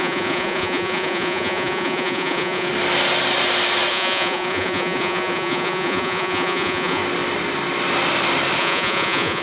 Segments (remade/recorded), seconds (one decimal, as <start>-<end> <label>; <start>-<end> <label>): 0.0-2.7 remade; 2.7-3.9 recorded; 3.9-7.0 remade; 7.0-8.6 recorded; 8.6-9.4 remade